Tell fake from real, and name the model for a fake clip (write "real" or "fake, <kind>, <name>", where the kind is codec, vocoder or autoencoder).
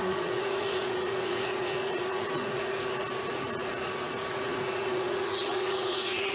fake, vocoder, Vocos